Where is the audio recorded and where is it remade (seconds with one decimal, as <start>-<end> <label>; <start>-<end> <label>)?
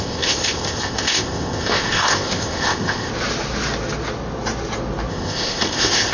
0.0-3.1 remade; 3.1-5.1 recorded; 5.1-6.1 remade